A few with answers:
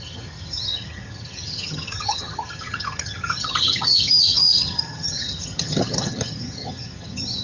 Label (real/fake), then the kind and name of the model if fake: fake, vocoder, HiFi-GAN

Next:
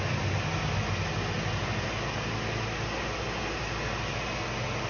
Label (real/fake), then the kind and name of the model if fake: real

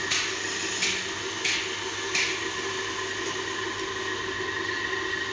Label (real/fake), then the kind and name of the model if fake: real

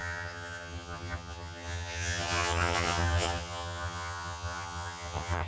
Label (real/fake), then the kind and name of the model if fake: fake, vocoder, HiFi-GAN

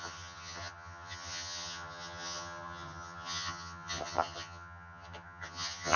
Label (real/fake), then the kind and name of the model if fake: fake, vocoder, HiFi-GAN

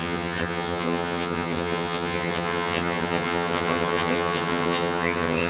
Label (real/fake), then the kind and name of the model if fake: fake, vocoder, HiFi-GAN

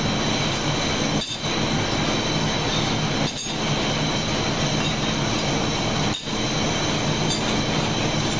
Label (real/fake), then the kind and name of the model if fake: real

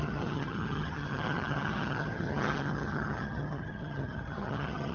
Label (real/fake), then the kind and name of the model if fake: fake, vocoder, HiFi-GAN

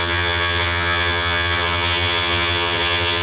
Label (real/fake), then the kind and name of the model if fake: fake, vocoder, HiFi-GAN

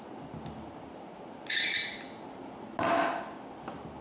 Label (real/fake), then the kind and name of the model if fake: real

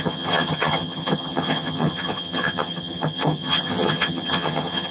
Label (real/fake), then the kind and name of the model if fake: fake, vocoder, HiFi-GAN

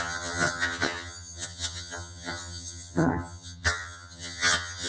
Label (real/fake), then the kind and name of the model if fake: fake, vocoder, HiFi-GAN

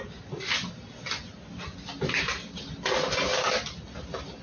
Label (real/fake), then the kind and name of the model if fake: real